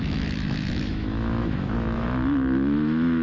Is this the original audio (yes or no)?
no